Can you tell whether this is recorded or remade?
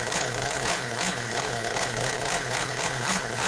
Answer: remade